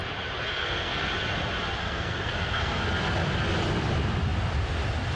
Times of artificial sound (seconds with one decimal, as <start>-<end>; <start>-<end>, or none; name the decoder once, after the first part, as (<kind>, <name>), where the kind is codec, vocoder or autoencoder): 0.5-1.1 (codec, SNAC); 1.8-2.8